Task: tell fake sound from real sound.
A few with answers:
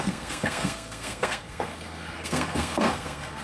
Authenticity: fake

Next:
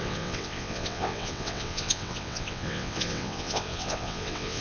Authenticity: fake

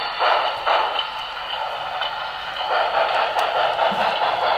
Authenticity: real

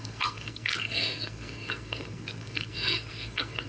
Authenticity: fake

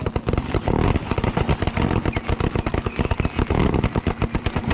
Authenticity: real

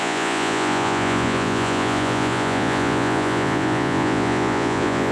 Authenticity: fake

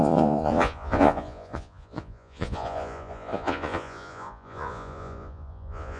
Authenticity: fake